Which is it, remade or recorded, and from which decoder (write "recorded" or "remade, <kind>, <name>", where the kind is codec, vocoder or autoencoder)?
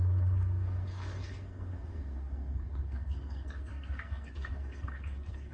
remade, codec, SNAC